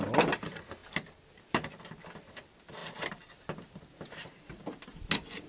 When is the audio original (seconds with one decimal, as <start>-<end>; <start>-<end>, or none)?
0.0-5.5